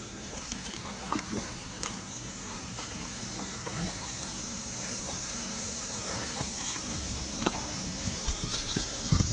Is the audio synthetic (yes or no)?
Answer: yes